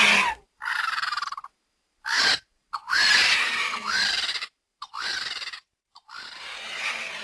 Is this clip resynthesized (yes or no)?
yes